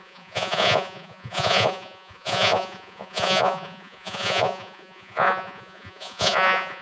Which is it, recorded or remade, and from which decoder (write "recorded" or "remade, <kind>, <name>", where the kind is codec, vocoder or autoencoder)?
remade, vocoder, Vocos